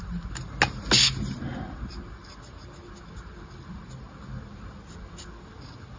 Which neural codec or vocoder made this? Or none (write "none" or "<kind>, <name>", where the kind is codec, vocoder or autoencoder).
none